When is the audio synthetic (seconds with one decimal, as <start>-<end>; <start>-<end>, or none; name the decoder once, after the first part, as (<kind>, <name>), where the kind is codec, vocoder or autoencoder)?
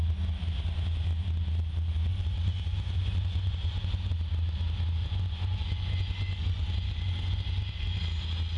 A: 2.1-4.1 (vocoder, Vocos); 5.0-8.0